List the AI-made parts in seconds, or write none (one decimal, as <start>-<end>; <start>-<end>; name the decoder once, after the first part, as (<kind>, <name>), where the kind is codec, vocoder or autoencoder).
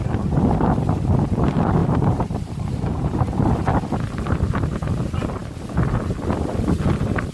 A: 1.8-3.1 (vocoder, BigVGAN v2)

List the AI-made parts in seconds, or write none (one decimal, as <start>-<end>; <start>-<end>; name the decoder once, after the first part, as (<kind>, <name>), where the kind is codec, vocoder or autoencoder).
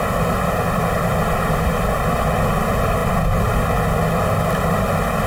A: none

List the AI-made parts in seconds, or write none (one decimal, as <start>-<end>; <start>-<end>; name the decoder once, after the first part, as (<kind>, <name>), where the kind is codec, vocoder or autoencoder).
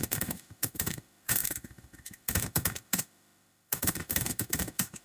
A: 0.0-5.0 (autoencoder, DAC-VAE)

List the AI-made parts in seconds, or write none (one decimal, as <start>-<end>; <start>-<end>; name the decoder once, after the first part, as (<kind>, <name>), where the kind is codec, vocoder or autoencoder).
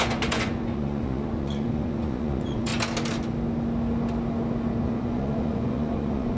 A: 0.0-2.7 (vocoder, Vocos); 4.8-6.4